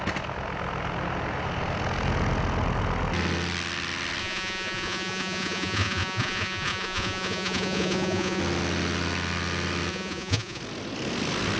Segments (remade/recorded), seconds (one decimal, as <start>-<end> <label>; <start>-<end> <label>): 0.0-4.2 recorded; 4.2-8.4 remade; 8.4-9.9 recorded; 9.9-10.6 remade; 10.6-11.6 recorded